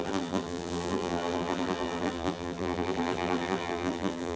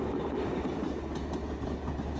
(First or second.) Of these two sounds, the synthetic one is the first